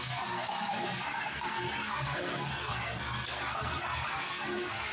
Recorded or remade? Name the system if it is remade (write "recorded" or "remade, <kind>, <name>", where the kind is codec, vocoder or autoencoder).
remade, codec, SNAC